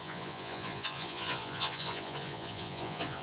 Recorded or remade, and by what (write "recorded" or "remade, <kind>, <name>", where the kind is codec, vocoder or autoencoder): remade, vocoder, Vocos